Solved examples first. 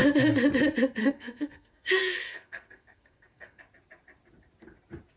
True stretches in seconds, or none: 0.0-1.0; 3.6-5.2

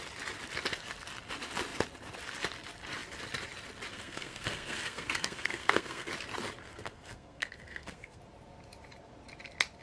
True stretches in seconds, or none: 0.0-3.9; 6.1-6.6; 8.2-9.8

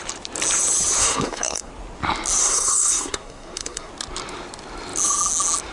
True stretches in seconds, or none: 0.0-1.0; 1.7-2.4; 3.9-5.7

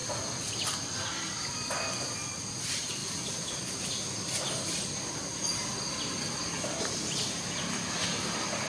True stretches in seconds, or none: 0.0-8.7